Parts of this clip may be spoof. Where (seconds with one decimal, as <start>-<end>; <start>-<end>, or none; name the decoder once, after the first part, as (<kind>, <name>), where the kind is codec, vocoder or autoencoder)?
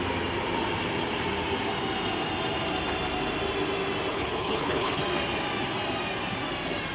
4.1-5.0 (codec, HILCodec)